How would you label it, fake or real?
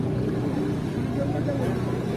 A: real